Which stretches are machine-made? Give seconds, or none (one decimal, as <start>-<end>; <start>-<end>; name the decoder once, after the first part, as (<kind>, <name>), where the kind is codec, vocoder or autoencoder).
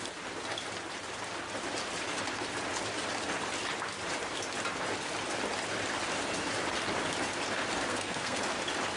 7.9-8.4 (codec, SNAC)